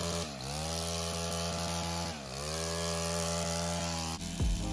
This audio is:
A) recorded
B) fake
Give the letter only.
A